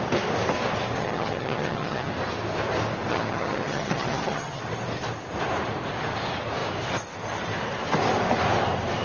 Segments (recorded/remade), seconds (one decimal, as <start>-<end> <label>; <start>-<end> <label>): 0.0-1.0 recorded; 1.0-2.1 remade; 2.1-3.1 recorded; 3.1-4.6 remade; 4.6-9.0 recorded

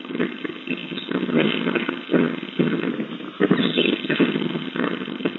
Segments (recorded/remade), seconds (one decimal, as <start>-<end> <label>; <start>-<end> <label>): 0.0-2.9 remade; 2.9-3.6 recorded; 3.6-5.4 remade

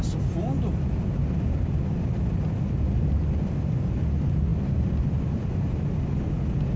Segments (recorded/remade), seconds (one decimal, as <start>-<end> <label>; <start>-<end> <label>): 0.0-6.8 recorded

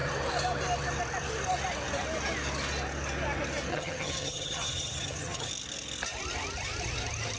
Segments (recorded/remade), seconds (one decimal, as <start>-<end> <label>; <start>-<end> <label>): 0.0-3.7 recorded; 3.7-5.5 remade; 5.5-7.4 recorded

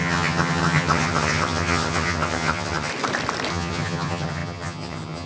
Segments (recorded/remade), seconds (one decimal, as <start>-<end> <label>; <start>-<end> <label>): 0.0-2.9 remade; 2.9-3.5 recorded; 3.5-5.3 remade

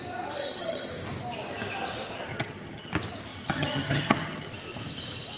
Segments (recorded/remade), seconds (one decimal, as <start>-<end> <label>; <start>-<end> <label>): 0.0-0.4 recorded; 0.4-0.9 remade; 0.9-2.3 recorded; 2.3-2.9 remade; 2.9-3.3 recorded; 3.3-4.5 remade; 4.5-5.4 recorded

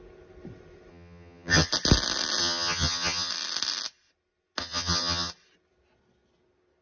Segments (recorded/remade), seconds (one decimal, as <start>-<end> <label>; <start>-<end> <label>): 0.0-0.9 recorded; 0.9-1.7 remade; 1.7-2.4 recorded; 2.4-3.3 remade; 3.3-4.6 recorded; 4.6-5.3 remade; 5.3-6.8 recorded

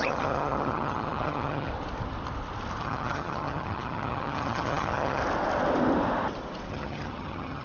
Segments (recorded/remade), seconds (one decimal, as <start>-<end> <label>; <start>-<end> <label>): 0.0-1.7 remade; 1.7-2.8 recorded; 2.8-5.2 remade; 5.2-6.7 recorded; 6.7-7.6 remade